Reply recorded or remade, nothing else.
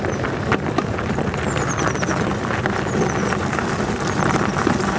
recorded